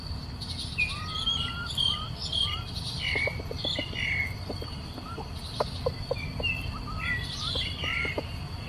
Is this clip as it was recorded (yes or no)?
yes